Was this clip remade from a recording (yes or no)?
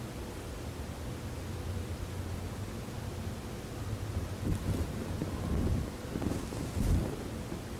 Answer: no